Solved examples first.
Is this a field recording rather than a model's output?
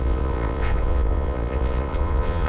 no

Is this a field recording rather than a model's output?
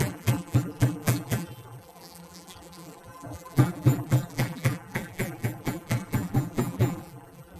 no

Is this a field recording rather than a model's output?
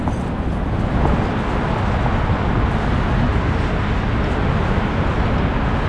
yes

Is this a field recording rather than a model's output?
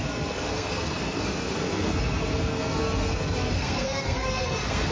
no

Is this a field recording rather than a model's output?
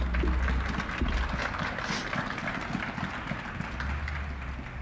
yes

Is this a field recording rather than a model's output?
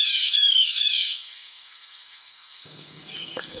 no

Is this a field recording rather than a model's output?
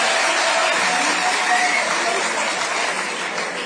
yes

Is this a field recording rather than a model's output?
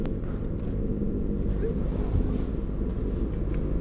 yes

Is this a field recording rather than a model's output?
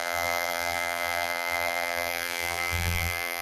no